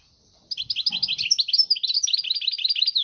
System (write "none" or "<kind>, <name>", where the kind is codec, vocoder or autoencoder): none